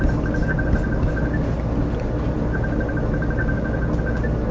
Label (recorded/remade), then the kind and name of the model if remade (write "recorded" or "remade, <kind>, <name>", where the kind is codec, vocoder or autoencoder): recorded